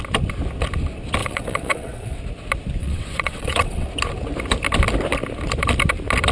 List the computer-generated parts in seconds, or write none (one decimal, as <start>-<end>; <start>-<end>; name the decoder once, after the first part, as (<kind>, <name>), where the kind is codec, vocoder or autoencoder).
1.2-2.2 (vocoder, WaveNeXt); 2.8-3.9